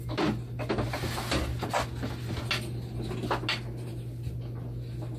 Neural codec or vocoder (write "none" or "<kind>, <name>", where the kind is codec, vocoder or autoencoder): none